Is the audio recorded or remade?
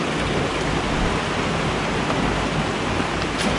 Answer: recorded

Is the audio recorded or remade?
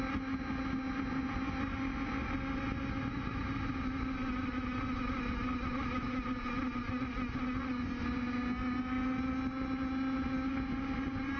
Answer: recorded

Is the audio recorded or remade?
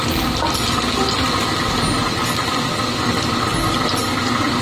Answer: recorded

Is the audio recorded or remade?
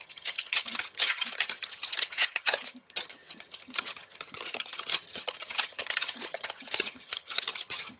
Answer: remade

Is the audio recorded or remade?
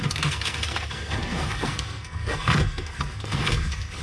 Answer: remade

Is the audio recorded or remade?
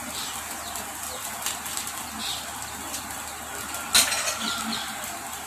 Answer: recorded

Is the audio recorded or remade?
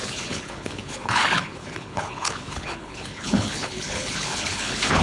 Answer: remade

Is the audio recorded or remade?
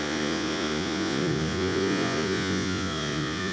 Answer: remade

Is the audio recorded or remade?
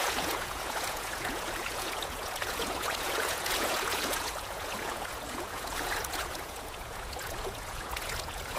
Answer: remade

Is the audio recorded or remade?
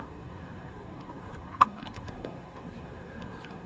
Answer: remade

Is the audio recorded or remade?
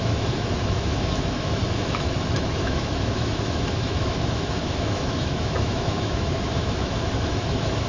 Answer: remade